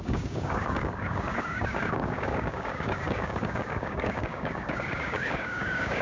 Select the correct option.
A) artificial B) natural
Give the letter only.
A